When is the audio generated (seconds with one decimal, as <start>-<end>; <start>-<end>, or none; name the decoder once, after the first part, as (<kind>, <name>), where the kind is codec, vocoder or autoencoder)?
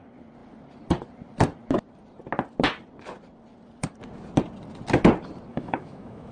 5.5-6.3 (autoencoder, DAC-VAE)